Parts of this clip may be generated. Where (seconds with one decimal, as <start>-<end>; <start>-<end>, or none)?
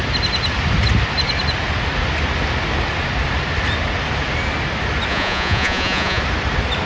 5.1-6.2